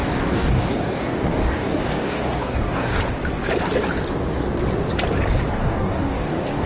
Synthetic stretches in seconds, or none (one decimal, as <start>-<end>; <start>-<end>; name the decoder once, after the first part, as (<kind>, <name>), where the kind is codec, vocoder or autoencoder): 0.0-3.0 (codec, DAC); 5.6-6.7